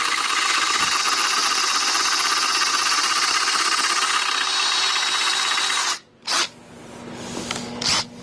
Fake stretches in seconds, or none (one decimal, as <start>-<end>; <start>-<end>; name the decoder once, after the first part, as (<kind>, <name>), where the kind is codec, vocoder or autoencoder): 5.8-6.4 (vocoder, Vocos)

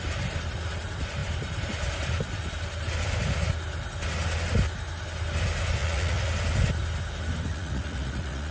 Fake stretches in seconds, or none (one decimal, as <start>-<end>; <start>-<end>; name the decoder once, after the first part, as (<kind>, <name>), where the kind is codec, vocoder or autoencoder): 5.8-6.3 (vocoder, Vocos); 7.5-8.5

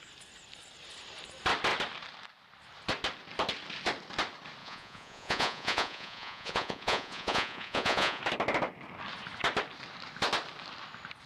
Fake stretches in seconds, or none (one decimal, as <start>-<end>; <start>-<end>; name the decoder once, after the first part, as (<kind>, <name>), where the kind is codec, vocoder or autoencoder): 4.6-8.2 (vocoder, Vocos)

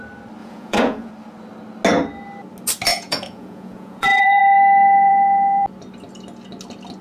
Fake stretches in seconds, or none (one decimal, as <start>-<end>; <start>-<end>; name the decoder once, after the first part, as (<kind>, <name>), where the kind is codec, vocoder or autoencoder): 0.4-1.1 (vocoder, Vocos); 2.9-4.4

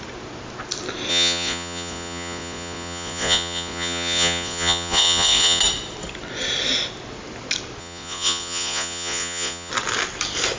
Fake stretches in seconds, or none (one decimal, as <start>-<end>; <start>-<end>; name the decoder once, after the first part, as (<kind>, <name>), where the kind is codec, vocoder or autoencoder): 1.1-5.6 (vocoder, Vocos); 7.8-9.7